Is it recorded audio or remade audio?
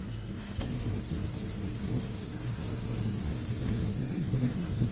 remade